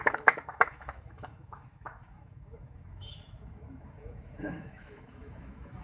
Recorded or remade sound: remade